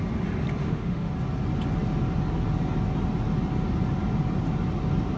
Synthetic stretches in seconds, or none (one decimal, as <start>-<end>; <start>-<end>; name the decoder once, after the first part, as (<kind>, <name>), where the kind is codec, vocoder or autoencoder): 0.6-1.1 (autoencoder, DAC-VAE)